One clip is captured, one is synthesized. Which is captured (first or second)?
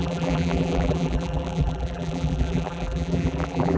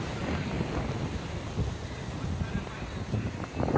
second